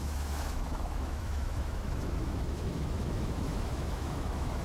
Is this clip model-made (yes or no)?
yes